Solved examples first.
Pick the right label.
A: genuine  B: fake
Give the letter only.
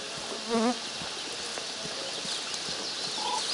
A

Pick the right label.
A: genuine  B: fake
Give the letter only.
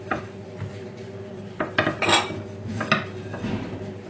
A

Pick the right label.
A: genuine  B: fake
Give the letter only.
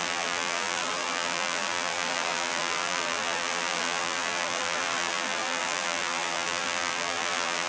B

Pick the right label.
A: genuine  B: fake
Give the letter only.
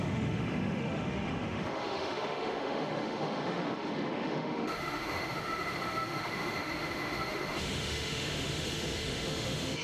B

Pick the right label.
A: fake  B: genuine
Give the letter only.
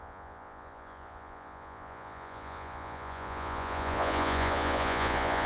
A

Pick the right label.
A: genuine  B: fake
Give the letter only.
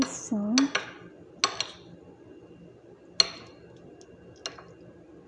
A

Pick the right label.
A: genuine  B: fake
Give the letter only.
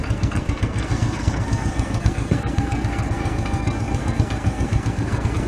B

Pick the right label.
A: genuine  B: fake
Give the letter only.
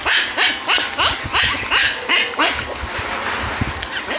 A